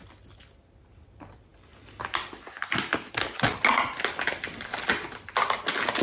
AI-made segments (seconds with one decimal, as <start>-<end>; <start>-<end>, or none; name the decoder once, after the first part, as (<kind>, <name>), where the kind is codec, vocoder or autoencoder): none